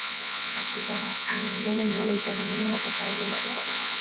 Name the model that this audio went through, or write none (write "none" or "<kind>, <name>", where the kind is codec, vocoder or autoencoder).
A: vocoder, Vocos